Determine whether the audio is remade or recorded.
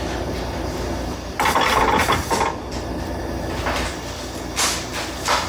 recorded